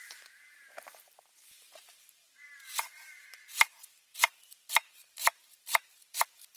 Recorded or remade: remade